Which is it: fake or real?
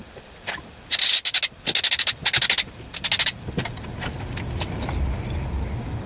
real